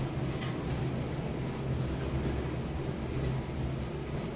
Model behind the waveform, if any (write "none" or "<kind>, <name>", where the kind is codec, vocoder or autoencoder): none